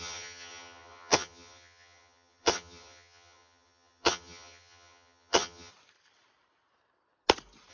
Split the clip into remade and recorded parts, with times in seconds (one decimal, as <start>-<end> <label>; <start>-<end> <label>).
0.0-5.7 remade; 5.7-7.7 recorded